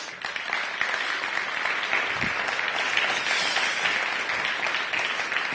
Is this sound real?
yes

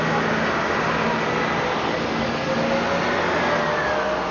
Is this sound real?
yes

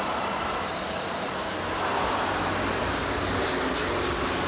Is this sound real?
yes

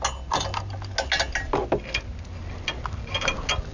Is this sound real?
yes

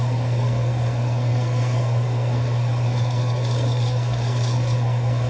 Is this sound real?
no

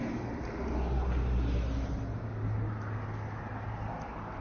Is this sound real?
yes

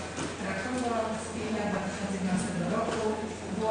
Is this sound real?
yes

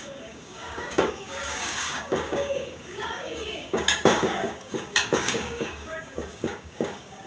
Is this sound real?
no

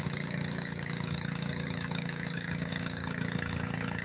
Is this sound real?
no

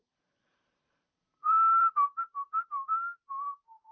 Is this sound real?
no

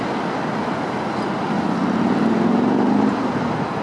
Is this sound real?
yes